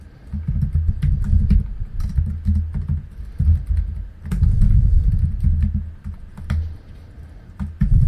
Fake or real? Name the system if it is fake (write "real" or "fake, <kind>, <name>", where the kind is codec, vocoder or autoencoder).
real